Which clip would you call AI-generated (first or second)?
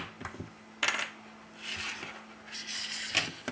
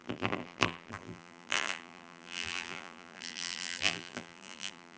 second